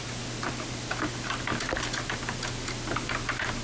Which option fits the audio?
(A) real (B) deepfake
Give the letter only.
A